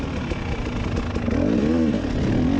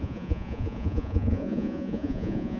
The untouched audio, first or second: first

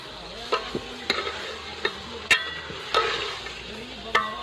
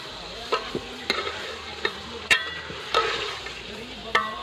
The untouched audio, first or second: first